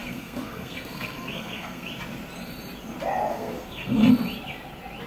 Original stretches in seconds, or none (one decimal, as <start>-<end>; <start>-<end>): 1.9-3.3; 4.1-5.1